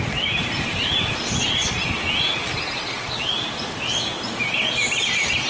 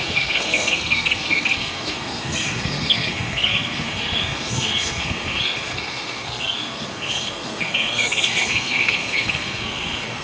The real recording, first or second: first